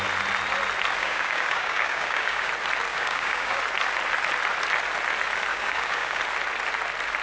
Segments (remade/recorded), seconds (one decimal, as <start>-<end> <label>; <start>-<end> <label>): 0.0-1.0 recorded; 1.0-2.5 remade; 2.5-2.9 recorded; 2.9-3.6 remade; 3.6-5.5 recorded; 5.5-6.2 remade; 6.2-7.2 recorded